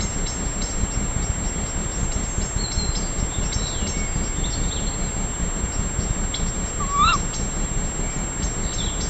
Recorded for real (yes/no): yes